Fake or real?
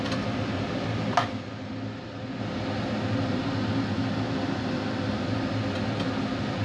real